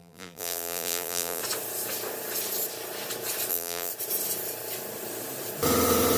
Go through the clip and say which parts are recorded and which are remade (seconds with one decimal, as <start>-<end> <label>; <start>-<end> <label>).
0.0-1.4 remade; 1.4-3.5 recorded; 3.5-3.9 remade; 3.9-6.2 recorded